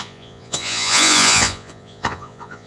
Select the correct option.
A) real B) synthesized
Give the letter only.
B